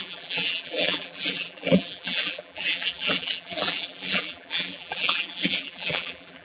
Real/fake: fake